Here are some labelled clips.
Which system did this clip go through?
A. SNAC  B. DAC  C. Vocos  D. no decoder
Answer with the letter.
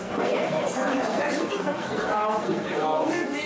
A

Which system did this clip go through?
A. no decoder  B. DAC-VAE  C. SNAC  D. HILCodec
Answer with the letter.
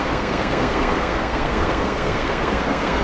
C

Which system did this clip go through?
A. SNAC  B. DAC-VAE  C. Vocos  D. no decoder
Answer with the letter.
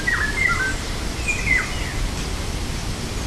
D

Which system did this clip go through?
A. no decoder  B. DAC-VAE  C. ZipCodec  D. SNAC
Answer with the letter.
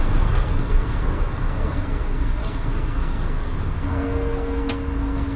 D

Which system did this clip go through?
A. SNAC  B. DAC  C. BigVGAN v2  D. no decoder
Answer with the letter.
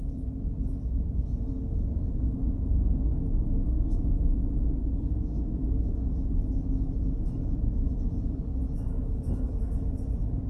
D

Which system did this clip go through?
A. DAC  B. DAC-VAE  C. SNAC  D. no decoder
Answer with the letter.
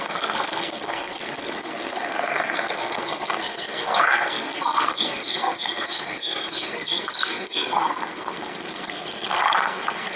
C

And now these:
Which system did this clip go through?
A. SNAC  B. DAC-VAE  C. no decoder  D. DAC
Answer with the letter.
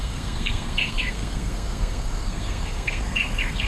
A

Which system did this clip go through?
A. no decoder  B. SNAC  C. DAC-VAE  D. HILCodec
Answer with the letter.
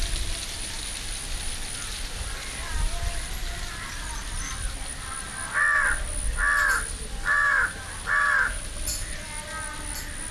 A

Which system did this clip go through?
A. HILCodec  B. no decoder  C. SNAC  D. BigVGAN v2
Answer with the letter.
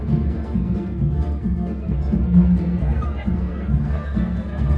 C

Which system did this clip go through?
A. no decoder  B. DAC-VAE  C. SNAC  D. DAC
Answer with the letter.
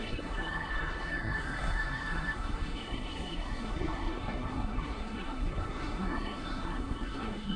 C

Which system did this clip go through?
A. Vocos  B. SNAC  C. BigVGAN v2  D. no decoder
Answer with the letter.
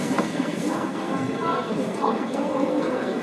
B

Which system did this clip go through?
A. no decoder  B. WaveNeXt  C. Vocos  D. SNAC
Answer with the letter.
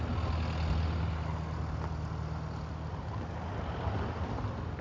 A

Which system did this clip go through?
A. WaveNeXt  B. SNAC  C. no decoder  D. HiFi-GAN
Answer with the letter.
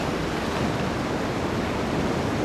C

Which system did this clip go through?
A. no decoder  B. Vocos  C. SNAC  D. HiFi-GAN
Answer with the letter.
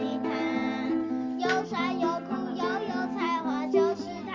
A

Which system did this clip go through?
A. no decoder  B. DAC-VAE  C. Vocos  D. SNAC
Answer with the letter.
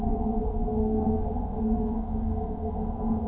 D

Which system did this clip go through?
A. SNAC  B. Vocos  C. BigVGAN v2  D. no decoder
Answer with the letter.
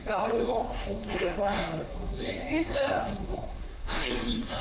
A